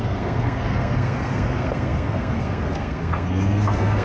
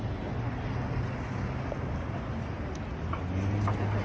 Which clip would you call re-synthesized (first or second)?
first